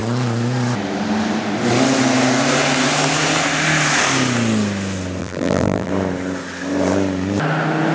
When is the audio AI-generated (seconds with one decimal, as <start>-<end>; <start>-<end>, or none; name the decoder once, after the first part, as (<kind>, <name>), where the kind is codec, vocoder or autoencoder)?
5.2-5.9 (vocoder, BigVGAN v2)